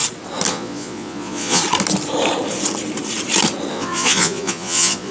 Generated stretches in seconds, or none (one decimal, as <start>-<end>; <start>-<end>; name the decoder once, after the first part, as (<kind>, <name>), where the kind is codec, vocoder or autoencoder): 0.5-1.6 (vocoder, Vocos); 3.7-5.1